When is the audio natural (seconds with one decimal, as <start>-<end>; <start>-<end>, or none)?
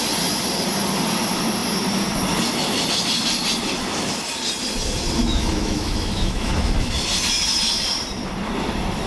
0.0-5.2; 6.9-9.1